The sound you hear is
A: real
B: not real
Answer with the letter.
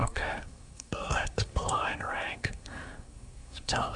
B